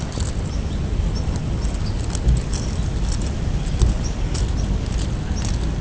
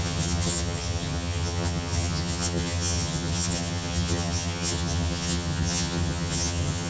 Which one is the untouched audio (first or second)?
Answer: first